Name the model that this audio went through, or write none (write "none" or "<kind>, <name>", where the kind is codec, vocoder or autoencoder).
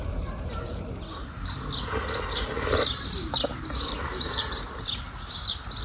none